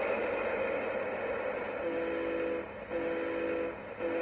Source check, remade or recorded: recorded